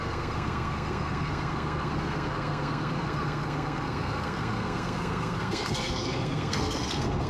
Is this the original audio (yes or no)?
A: no